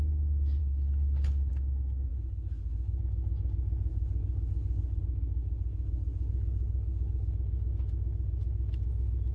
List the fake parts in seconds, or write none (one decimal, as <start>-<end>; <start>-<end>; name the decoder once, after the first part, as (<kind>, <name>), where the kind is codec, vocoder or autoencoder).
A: 0.6-1.5 (codec, HILCodec); 2.1-3.0; 3.9-5.0; 5.4-7.3